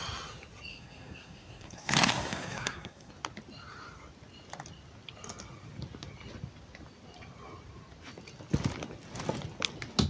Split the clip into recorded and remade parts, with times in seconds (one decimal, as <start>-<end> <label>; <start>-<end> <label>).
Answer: 0.0-0.7 recorded; 0.7-3.1 remade; 3.1-10.1 recorded